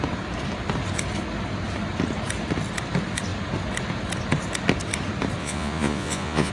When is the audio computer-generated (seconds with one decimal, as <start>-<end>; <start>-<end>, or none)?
5.4-6.5